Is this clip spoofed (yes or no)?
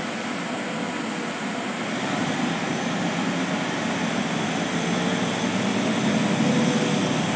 no